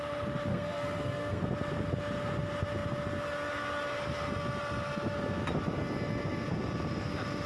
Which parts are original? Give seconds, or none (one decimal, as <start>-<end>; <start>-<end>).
0.0-0.5; 1.4-7.5